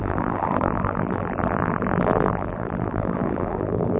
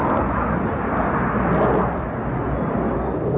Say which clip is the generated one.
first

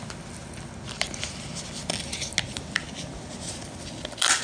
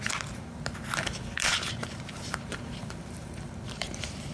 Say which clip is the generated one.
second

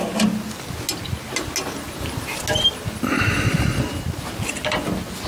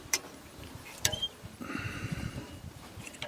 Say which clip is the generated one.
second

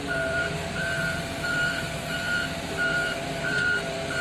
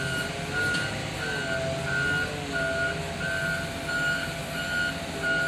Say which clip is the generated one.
first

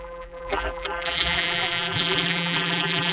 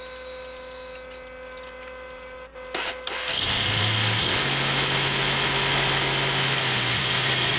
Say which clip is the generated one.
first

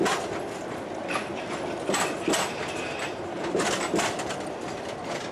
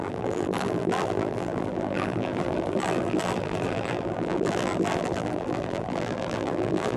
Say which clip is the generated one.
second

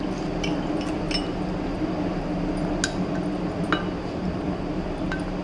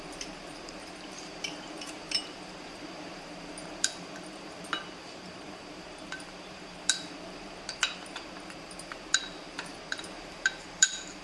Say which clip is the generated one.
second